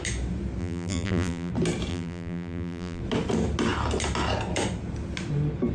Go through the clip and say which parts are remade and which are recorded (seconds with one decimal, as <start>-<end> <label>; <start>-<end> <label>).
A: 0.0-0.6 recorded; 0.6-1.5 remade; 1.5-1.9 recorded; 1.9-3.0 remade; 3.0-5.7 recorded